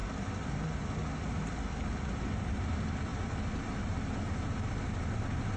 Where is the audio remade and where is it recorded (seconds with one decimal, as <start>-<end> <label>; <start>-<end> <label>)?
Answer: 0.0-5.6 recorded